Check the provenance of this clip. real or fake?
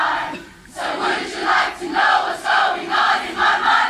real